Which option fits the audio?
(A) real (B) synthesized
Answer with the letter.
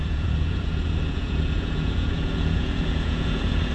B